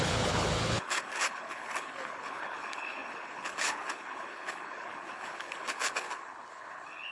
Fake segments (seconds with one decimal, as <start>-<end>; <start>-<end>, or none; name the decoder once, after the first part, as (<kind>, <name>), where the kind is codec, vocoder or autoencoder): 0.0-7.1 (codec, HILCodec)